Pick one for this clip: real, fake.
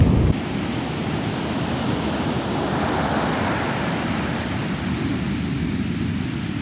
real